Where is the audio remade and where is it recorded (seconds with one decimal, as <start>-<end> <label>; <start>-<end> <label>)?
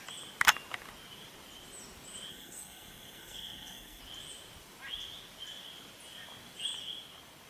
0.0-2.3 recorded; 2.3-4.0 remade; 4.0-7.5 recorded